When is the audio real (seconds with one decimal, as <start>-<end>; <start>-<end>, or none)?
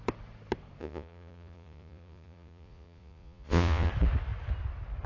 0.0-0.8; 3.9-5.1